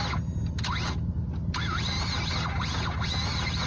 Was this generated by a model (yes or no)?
no